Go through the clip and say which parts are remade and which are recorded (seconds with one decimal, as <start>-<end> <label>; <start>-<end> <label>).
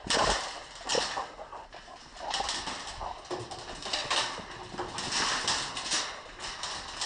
0.0-7.1 recorded